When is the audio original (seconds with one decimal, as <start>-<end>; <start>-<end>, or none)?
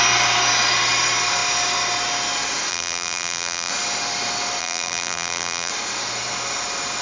0.0-2.7; 3.7-4.6; 5.7-7.0